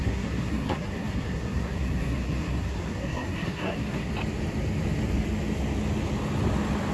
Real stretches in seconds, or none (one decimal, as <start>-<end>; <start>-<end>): 4.1-6.9

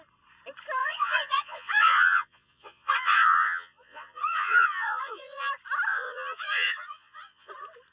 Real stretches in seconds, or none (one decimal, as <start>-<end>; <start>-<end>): 0.0-0.8; 5.5-5.9; 7.5-7.9

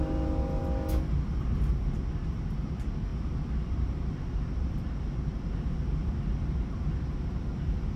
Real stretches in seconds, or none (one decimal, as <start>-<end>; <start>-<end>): 0.0-8.0

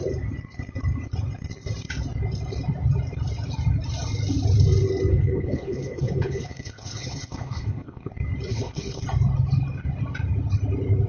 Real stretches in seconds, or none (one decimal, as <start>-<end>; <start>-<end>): 0.0-5.1; 8.1-8.5; 9.0-11.1

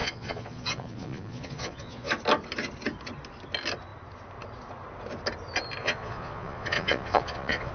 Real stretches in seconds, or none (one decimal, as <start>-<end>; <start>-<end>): 2.1-5.8

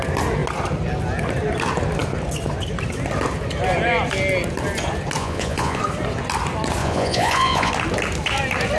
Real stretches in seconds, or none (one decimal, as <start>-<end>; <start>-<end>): 0.0-5.2; 5.8-6.8; 7.7-8.8

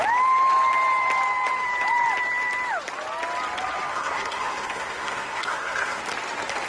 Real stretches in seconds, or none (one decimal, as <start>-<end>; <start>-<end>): 0.0-3.9; 6.0-6.7